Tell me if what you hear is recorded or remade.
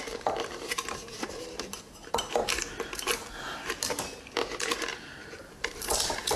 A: remade